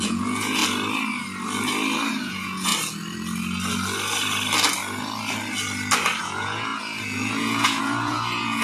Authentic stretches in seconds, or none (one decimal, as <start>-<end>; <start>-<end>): 0.6-2.1; 2.7-6.2